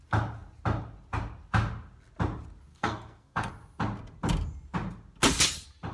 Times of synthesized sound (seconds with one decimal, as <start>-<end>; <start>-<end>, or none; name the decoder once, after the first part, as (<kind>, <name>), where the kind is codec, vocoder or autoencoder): 2.7-3.5 (codec, SNAC)